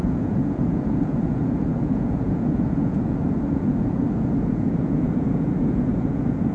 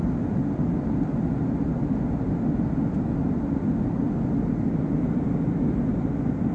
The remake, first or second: first